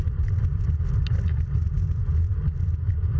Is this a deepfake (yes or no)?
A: no